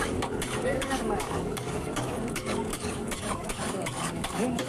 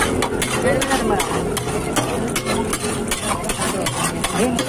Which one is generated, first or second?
first